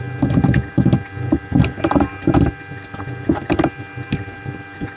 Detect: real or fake real